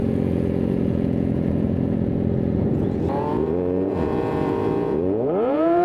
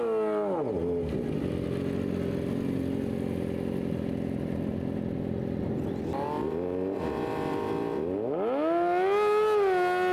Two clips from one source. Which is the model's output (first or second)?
first